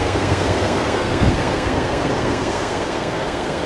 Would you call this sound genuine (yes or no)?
no